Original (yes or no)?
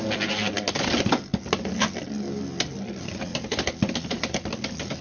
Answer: yes